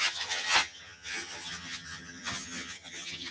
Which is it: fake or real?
fake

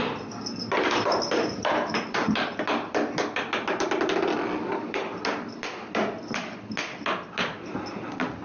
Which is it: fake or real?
real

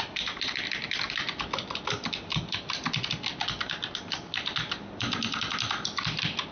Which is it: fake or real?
real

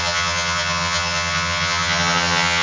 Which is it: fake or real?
fake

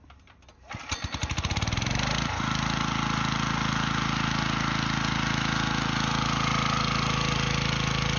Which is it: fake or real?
real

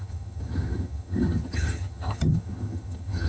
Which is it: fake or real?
fake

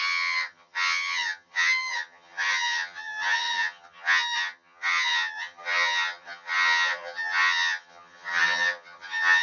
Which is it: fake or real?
fake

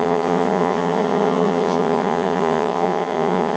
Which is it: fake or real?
fake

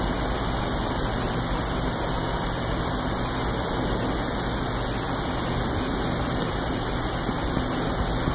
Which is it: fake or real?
real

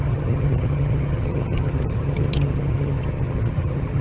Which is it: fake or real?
fake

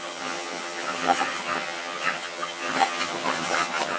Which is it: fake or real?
fake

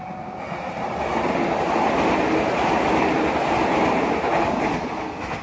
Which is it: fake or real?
real